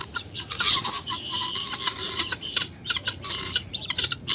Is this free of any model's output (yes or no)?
no